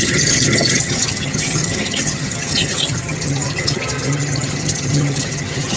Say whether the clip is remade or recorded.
remade